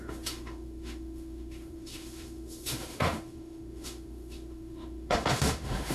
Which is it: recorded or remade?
remade